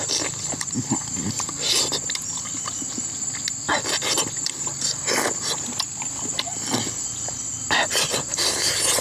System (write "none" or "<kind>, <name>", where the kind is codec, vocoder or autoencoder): none